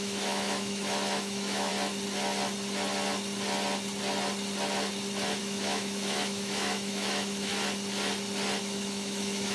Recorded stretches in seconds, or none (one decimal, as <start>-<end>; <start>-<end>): 1.7-5.4; 7.5-8.6